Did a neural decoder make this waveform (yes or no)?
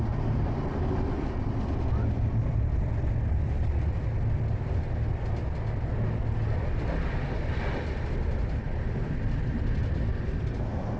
no